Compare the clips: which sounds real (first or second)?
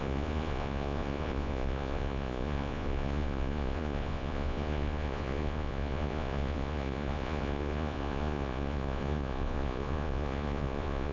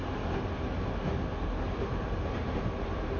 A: second